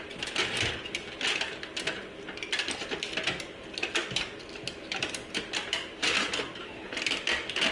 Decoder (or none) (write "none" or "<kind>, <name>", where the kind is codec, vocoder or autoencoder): none